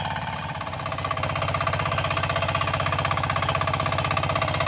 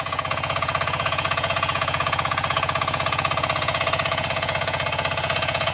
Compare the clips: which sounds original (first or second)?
first